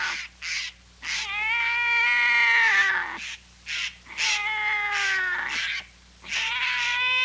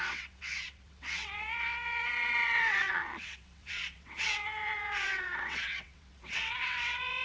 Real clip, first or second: first